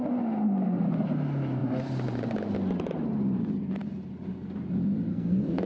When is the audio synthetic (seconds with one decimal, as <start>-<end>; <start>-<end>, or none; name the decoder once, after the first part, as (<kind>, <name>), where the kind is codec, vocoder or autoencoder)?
5.1-5.7 (codec, SNAC)